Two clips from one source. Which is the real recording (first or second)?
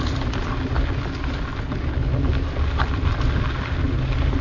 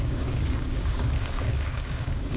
first